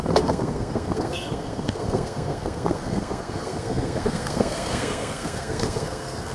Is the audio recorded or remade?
remade